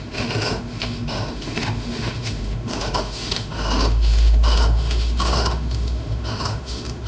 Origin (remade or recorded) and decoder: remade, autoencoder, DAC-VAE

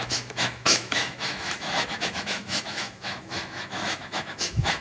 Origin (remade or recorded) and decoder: remade, autoencoder, DAC-VAE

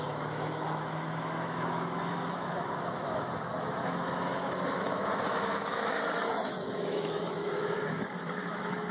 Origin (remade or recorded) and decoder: remade, autoencoder, DAC-VAE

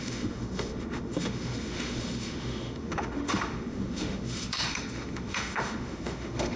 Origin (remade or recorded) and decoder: remade, autoencoder, DAC-VAE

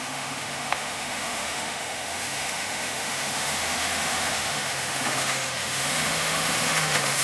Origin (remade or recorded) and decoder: remade, autoencoder, DAC-VAE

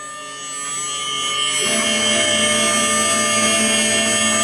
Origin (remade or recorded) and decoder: recorded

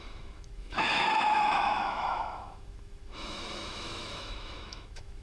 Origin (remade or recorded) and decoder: remade, autoencoder, DAC-VAE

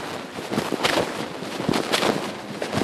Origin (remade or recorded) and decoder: recorded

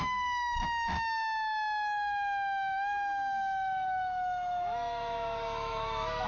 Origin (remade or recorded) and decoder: remade, autoencoder, DAC-VAE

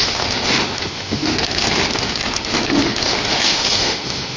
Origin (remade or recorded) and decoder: remade, autoencoder, DAC-VAE